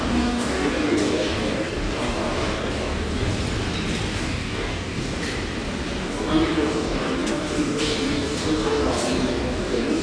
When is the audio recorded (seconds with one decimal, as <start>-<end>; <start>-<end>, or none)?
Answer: 3.3-4.1; 5.2-6.0